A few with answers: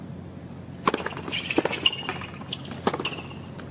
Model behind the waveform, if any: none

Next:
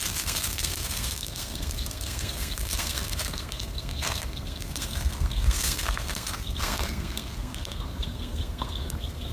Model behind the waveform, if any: codec, SNAC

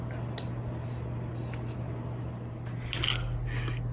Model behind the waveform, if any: none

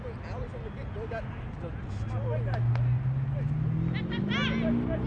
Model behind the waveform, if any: none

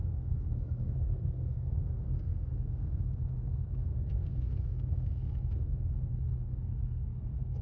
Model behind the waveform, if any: codec, SNAC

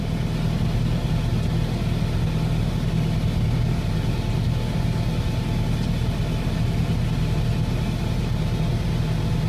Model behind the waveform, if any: none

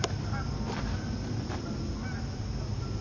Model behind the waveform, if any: none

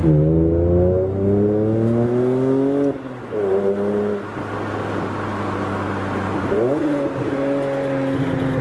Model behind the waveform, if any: none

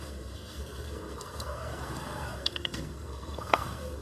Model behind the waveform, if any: codec, SNAC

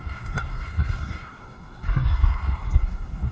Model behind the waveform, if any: codec, SNAC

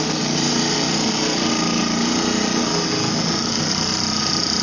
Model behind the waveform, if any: none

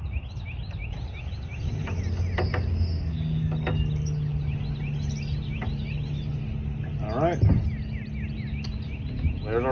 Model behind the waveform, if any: none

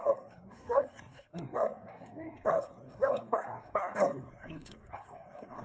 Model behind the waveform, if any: codec, SNAC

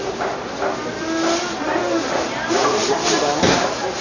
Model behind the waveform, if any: none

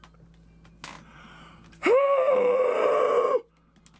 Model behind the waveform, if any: none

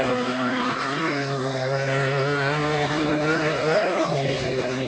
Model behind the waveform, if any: codec, SNAC